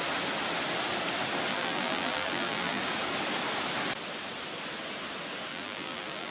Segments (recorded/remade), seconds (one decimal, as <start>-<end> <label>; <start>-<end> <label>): 0.0-1.5 recorded; 1.5-2.8 remade; 2.8-5.5 recorded; 5.5-6.3 remade